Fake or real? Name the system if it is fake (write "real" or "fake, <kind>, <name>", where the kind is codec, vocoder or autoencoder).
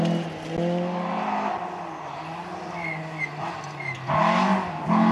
real